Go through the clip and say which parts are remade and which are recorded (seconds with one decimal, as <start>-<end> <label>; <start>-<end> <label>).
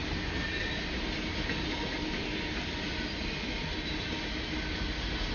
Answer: 0.0-5.3 recorded